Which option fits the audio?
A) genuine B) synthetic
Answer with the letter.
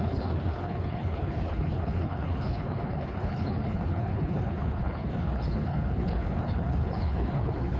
B